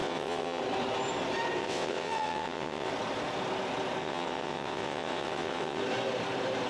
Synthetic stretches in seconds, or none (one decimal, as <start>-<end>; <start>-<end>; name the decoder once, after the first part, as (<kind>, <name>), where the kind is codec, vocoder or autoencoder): 0.0-0.6 (vocoder, WaveNeXt); 1.6-2.9; 4.0-5.8